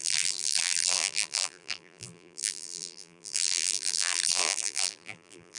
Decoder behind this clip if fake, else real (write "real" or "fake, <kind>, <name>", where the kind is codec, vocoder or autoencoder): fake, vocoder, BigVGAN v2